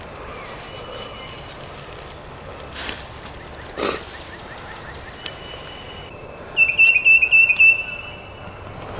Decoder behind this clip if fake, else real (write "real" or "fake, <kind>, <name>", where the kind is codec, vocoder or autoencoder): real